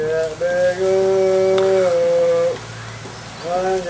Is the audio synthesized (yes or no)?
no